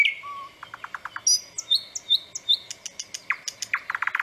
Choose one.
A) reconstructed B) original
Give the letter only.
B